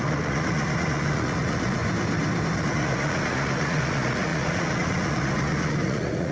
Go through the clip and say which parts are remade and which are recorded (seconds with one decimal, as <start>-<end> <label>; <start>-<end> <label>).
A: 0.0-1.8 remade; 1.8-2.6 recorded; 2.6-6.3 remade